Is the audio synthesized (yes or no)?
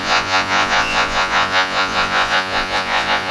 yes